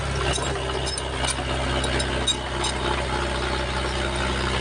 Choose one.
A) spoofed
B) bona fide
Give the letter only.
B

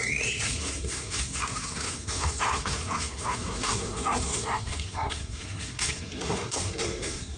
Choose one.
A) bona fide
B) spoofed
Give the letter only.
B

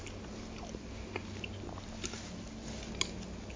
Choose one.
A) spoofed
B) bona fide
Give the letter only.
B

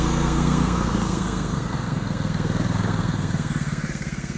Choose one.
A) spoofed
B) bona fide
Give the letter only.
A